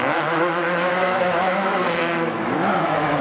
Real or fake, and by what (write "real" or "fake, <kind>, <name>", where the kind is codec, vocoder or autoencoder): fake, autoencoder, DAC-VAE